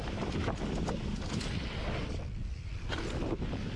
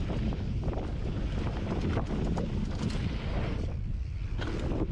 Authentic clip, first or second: second